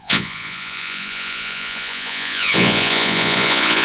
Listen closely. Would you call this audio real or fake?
fake